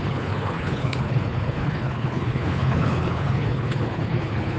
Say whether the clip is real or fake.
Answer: fake